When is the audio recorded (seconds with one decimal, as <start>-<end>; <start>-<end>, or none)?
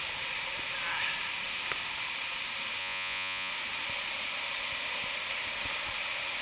0.0-2.8; 3.5-6.4